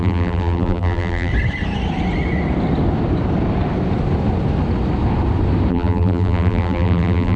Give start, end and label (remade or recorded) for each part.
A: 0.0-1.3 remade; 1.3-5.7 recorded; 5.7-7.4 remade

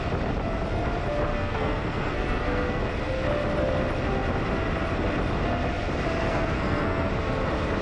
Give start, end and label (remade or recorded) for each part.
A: 0.0-1.3 recorded; 1.3-2.8 remade; 2.8-6.2 recorded; 6.2-7.1 remade; 7.1-7.8 recorded

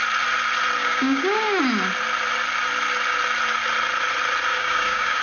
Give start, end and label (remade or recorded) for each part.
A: 0.0-0.8 recorded; 0.8-1.6 remade; 1.6-4.5 recorded; 4.5-5.2 remade